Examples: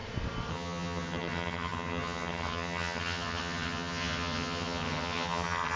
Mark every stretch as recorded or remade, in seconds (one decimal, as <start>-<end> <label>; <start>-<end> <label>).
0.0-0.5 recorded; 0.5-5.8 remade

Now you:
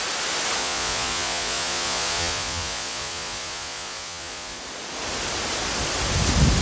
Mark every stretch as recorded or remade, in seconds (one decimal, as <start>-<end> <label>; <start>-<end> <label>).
0.0-0.6 recorded; 0.6-4.6 remade; 4.6-6.6 recorded

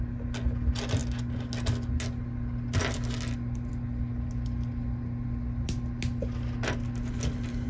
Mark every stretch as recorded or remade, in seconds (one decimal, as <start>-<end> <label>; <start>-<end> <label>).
0.0-7.7 recorded

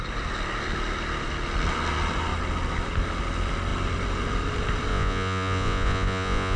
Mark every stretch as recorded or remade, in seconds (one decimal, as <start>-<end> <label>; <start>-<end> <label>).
0.0-4.9 recorded; 4.9-6.6 remade